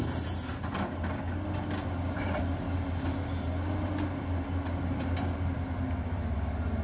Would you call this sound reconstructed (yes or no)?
no